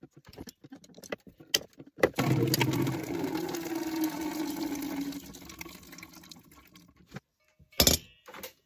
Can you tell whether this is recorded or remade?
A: recorded